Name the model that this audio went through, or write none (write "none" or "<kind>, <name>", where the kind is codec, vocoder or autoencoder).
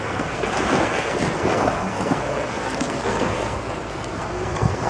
codec, SNAC